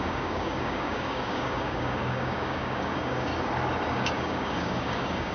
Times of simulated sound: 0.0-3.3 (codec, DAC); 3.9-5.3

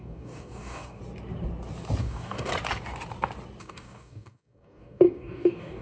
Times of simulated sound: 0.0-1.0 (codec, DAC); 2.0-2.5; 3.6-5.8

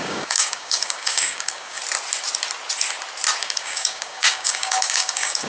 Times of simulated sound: 0.0-1.8 (codec, DAC); 3.4-5.5

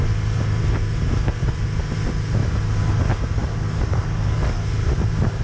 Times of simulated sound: 3.4-4.6 (codec, DAC)

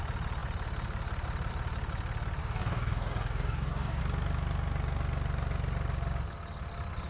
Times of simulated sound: 2.4-4.0 (codec, DAC)

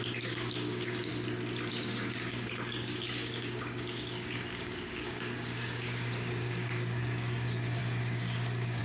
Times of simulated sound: 0.0-1.1 (codec, DAC); 1.7-8.8

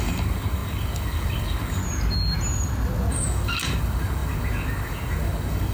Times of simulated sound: 0.0-1.8 (codec, DAC); 3.1-5.7